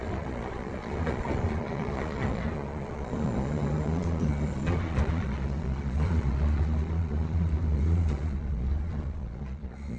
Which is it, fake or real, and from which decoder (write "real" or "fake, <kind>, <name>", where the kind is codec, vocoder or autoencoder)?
fake, vocoder, Vocos